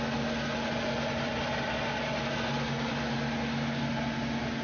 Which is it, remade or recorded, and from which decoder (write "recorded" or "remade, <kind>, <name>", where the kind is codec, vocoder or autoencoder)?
recorded